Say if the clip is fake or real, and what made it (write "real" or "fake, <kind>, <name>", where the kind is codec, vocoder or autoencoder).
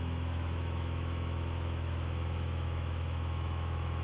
fake, autoencoder, DAC-VAE